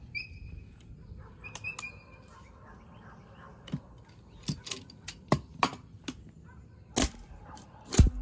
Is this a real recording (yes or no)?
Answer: yes